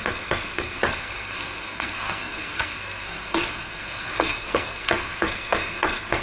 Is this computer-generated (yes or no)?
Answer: yes